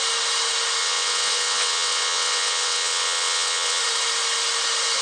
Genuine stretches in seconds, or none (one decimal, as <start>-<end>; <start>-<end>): 0.0-0.8; 3.8-5.0